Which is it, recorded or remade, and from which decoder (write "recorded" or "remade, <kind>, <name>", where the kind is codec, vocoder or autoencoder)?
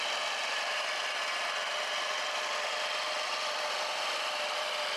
recorded